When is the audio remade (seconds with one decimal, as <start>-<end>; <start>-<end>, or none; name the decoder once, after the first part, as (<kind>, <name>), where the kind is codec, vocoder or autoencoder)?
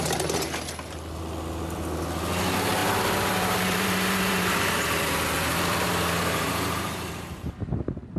2.8-7.5 (vocoder, BigVGAN v2)